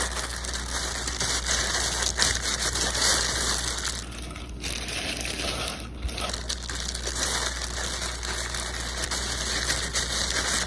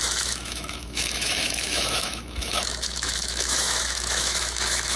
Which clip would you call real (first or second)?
first